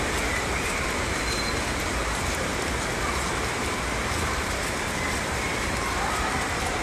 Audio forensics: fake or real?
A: fake